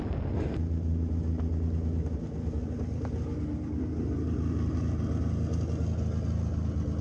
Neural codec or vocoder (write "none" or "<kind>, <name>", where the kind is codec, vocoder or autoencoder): none